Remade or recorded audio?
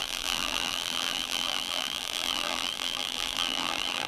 remade